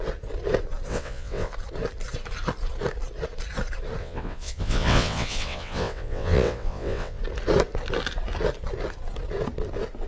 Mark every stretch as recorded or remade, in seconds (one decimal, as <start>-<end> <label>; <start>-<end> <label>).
0.0-0.9 recorded; 0.9-1.5 remade; 1.5-4.0 recorded; 4.0-7.2 remade; 7.2-10.1 recorded